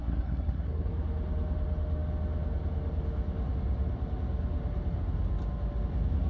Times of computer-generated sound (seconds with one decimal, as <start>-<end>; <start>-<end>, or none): 0.0-0.9